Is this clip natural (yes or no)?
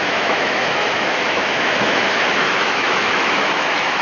no